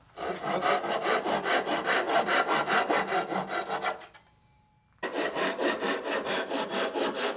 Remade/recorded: remade